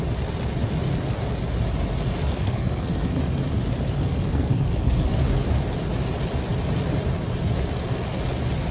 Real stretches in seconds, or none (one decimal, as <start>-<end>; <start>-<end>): 0.0-2.2; 3.2-4.1; 5.1-8.7